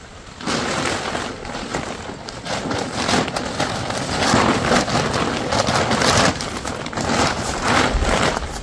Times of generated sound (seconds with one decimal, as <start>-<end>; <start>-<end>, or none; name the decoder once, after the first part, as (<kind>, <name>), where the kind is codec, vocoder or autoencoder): none